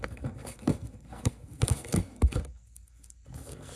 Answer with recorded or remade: remade